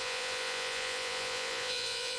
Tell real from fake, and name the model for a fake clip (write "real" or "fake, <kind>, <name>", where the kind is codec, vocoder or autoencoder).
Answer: fake, vocoder, Vocos